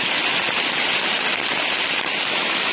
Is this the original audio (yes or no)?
yes